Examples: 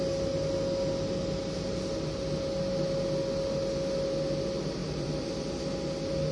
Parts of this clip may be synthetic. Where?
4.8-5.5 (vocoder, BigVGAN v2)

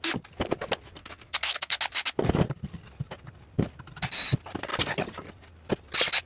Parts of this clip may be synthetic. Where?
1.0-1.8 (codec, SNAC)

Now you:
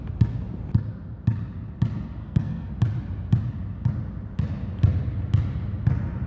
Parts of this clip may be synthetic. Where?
2.2-2.7 (codec, SNAC)